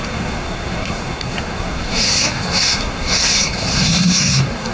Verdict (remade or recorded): remade